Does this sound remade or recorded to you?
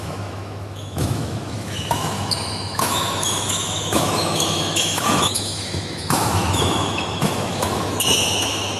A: remade